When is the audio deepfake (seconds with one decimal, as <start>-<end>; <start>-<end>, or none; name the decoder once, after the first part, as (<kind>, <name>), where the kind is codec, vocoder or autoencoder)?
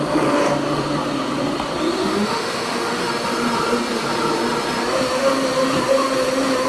2.0-3.1 (autoencoder, DAC-VAE)